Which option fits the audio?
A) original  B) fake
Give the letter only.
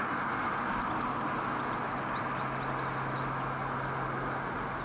A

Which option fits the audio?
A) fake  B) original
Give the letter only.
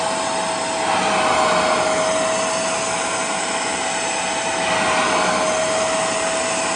B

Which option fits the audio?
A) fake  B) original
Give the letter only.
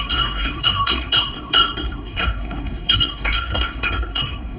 A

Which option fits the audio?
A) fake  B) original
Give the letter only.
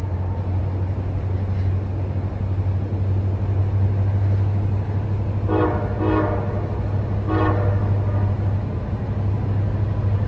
B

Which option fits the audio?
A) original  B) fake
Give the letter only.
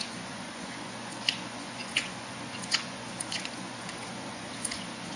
B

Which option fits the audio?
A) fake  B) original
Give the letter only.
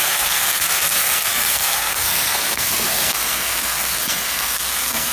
A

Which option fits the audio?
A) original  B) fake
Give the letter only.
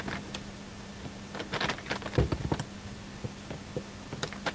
B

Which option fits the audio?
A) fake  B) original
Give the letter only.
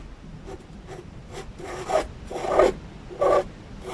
B